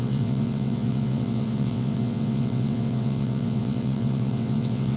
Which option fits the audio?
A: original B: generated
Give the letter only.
B